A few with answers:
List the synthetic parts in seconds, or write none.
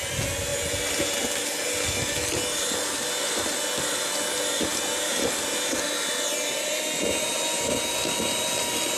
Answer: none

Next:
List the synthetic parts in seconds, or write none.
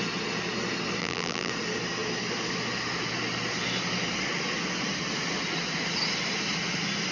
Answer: 1.0-1.5 (vocoder, BigVGAN v2)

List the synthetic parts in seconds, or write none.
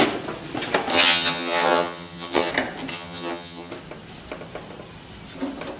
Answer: 0.9-2.5 (vocoder, HiFi-GAN); 2.9-3.7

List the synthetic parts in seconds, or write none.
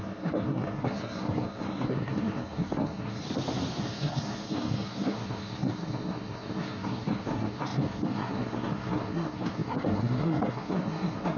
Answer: 0.0-3.2 (codec, SNAC); 3.8-11.4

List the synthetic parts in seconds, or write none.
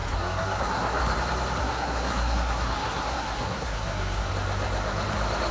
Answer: 0.0-1.0 (codec, SNAC); 1.6-4.3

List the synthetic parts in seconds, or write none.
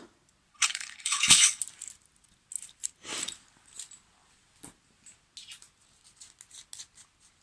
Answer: 0.5-1.6 (codec, HILCodec)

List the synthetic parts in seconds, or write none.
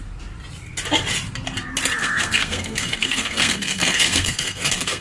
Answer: 2.0-5.0 (codec, SNAC)